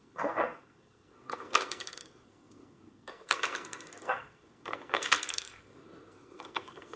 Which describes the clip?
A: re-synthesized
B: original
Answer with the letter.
A